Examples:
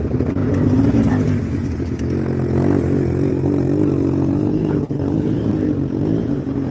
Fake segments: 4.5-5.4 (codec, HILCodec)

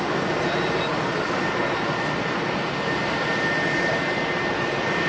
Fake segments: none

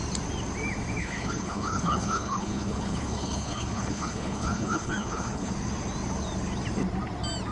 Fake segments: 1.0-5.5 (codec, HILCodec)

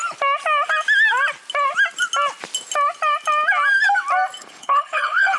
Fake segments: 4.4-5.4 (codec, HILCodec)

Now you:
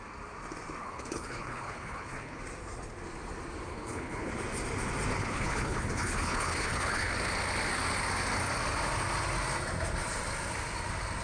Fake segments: 0.8-2.4 (codec, HILCodec); 3.7-4.3; 5.1-7.1

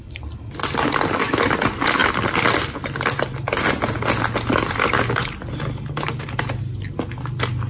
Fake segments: none

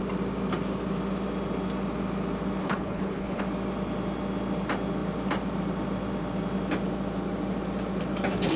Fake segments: 2.6-3.4 (codec, HILCodec)

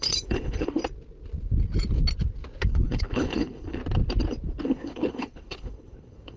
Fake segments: 0.0-0.8 (codec, HILCodec); 2.7-3.8; 4.6-6.4